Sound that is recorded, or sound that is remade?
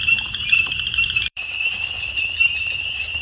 remade